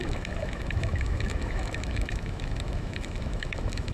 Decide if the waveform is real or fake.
fake